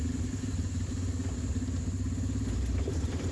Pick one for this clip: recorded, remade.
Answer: recorded